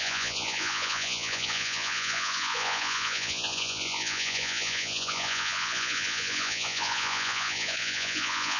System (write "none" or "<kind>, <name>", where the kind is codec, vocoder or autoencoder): vocoder, Vocos